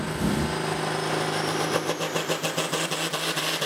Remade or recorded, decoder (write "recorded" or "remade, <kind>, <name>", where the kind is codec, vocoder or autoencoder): recorded